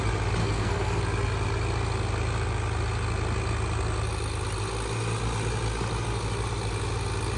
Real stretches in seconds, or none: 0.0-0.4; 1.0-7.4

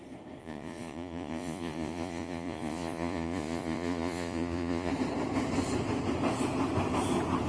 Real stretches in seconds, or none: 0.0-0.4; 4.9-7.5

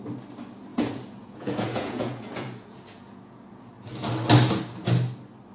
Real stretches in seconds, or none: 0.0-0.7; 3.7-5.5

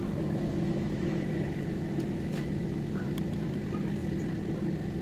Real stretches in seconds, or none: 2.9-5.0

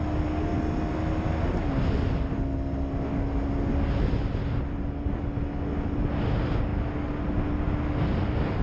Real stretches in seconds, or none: 0.0-8.6

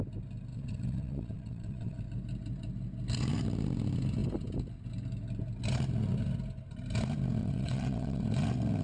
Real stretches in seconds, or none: 0.0-0.5; 2.0-7.4; 8.2-8.8